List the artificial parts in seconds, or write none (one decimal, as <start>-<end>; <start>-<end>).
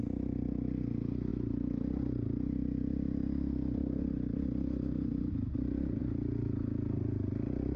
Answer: none